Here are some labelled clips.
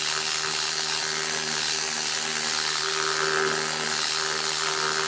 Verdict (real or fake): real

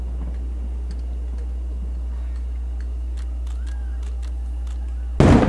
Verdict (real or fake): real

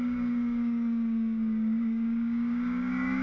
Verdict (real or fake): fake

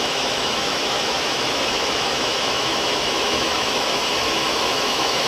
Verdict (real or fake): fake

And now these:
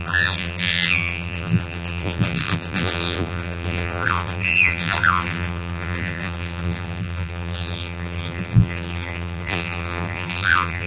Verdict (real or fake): fake